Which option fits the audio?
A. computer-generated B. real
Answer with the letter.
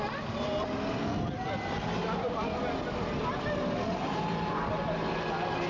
B